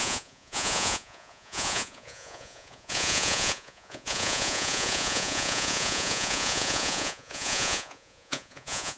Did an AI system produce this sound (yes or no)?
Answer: yes